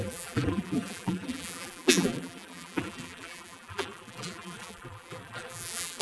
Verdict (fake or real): fake